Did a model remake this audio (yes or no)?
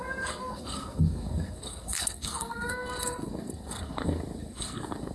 yes